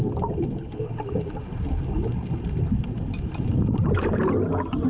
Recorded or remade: recorded